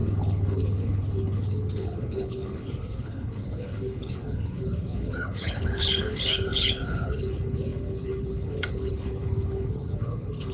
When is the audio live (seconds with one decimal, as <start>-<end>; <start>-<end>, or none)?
none